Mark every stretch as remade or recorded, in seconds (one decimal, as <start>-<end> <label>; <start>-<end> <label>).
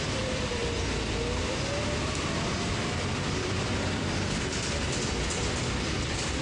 0.0-0.6 remade; 0.6-1.4 recorded; 1.4-6.4 remade